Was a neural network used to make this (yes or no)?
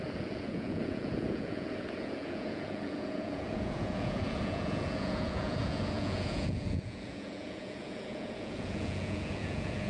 yes